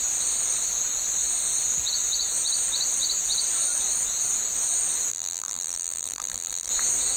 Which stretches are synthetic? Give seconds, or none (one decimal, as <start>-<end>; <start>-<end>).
5.1-6.7